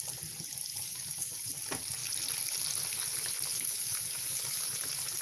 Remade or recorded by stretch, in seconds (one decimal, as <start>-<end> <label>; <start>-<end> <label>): 0.0-0.7 recorded; 0.7-1.5 remade; 1.5-3.5 recorded; 3.5-4.8 remade; 4.8-5.2 recorded